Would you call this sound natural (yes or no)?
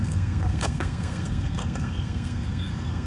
no